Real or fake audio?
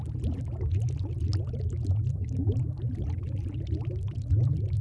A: real